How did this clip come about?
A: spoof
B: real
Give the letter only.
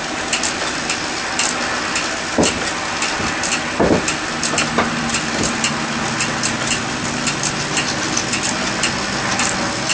B